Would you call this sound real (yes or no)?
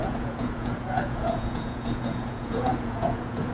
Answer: no